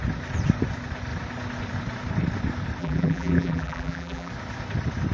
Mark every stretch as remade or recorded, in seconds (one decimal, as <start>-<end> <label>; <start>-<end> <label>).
0.0-2.8 recorded; 2.8-4.3 remade; 4.3-5.1 recorded